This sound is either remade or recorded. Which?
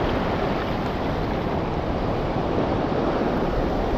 recorded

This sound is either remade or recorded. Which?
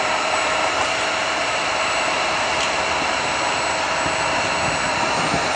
recorded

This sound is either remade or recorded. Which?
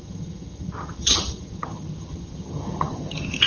remade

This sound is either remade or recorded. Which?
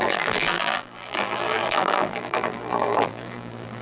remade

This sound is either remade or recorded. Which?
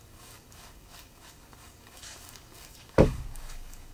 remade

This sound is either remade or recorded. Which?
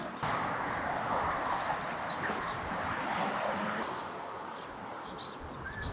recorded